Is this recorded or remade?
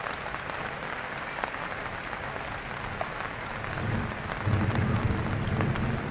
recorded